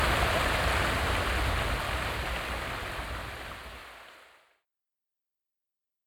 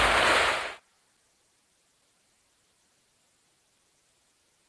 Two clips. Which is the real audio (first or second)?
first